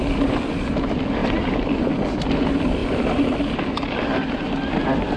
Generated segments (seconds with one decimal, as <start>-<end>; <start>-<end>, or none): 1.2-1.8; 2.8-3.4